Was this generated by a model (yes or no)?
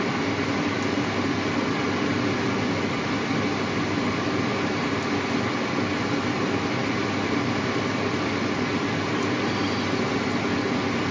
no